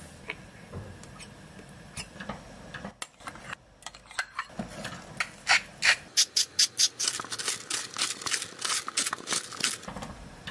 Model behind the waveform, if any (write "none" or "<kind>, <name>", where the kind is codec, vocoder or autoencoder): none